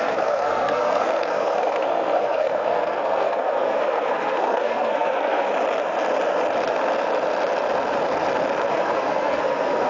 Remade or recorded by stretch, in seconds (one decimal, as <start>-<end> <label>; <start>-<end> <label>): 0.0-5.5 remade; 5.5-8.7 recorded; 8.7-9.9 remade

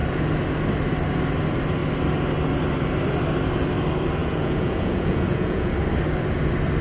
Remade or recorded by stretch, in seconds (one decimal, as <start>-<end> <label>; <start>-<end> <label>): 0.0-4.2 recorded; 4.2-5.7 remade; 5.7-6.8 recorded